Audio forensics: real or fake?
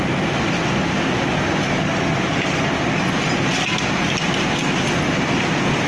real